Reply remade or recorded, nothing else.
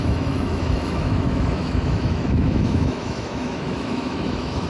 remade